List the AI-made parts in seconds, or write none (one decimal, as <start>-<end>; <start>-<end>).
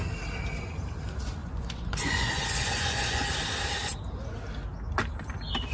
1.4-3.3